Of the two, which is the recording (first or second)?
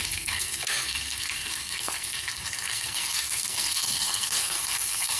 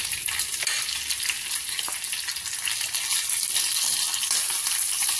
second